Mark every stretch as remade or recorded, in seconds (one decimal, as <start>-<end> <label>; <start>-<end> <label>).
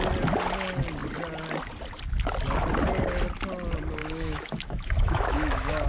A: 0.0-4.0 recorded; 4.0-5.9 remade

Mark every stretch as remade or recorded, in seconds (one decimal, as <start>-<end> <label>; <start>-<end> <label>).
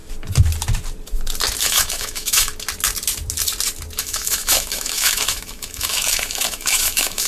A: 0.0-1.6 recorded; 1.6-2.5 remade; 2.5-4.0 recorded; 4.0-7.3 remade